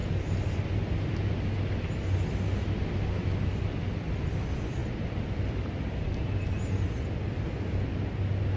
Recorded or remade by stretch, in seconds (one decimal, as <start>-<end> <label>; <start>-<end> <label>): 0.0-1.1 remade; 1.1-8.6 recorded